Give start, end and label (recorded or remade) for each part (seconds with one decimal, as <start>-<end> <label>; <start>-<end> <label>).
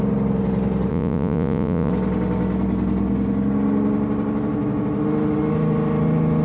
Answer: 0.0-0.9 recorded; 0.9-1.9 remade; 1.9-6.4 recorded